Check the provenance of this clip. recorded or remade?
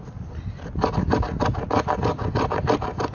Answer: recorded